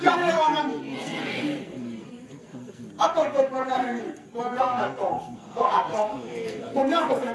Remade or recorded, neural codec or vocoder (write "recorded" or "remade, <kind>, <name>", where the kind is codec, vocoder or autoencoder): remade, codec, SNAC